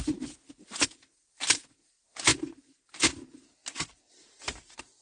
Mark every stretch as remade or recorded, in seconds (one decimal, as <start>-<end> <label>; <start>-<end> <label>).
0.0-5.0 recorded